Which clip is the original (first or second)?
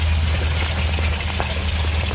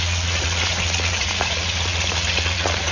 first